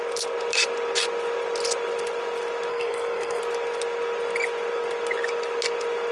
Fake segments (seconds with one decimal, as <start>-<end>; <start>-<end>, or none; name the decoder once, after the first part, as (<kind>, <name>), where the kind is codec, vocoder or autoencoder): 2.7-3.4 (codec, SNAC)